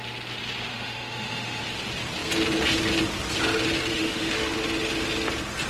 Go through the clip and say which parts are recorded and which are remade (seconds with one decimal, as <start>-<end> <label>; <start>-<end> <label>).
0.0-0.7 recorded; 0.7-1.6 remade; 1.6-3.9 recorded; 3.9-4.5 remade; 4.5-5.7 recorded